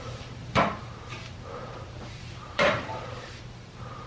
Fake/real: fake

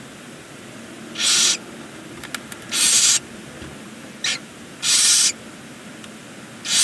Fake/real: real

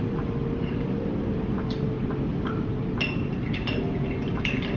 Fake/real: fake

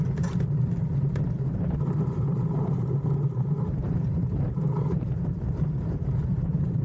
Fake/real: fake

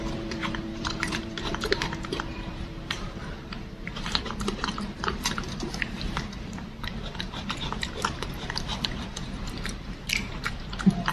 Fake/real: fake